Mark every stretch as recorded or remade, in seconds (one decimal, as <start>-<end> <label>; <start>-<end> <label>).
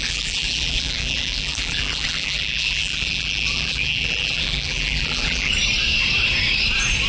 0.0-5.5 remade; 5.5-7.1 recorded